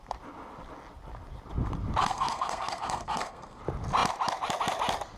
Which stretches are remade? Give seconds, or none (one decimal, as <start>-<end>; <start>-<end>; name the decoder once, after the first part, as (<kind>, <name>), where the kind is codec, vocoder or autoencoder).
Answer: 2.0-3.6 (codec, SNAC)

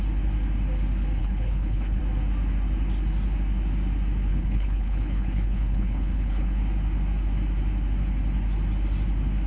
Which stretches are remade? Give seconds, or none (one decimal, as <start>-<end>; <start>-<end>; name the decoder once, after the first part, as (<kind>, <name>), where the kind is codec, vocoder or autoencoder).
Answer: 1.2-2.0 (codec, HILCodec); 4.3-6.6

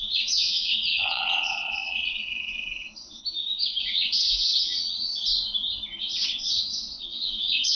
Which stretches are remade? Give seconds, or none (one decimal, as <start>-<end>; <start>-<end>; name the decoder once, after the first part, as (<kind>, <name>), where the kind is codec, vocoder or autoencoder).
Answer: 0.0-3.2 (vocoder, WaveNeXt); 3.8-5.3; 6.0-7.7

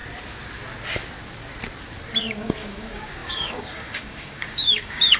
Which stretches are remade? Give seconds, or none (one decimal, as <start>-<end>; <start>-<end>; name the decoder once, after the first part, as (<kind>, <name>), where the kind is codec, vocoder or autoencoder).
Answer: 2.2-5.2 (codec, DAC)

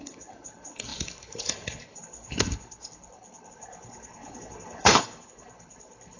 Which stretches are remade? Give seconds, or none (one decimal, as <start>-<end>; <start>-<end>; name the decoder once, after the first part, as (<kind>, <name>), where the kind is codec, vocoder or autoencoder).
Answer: 0.0-6.2 (codec, HILCodec)